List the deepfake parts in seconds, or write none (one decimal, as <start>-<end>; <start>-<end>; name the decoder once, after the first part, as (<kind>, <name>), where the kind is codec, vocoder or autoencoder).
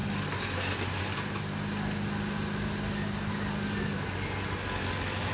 none